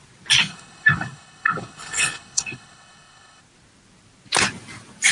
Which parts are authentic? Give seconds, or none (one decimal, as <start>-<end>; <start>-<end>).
0.0-0.5; 3.4-5.1